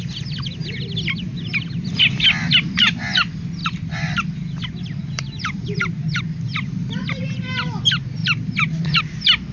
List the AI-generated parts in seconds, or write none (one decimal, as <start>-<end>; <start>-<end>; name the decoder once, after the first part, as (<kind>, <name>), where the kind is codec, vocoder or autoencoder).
3.6-6.2 (vocoder, BigVGAN v2)